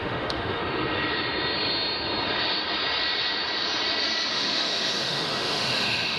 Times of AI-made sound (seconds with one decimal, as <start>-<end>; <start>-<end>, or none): 0.0-0.6; 4.3-6.2